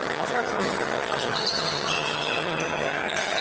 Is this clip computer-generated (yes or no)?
yes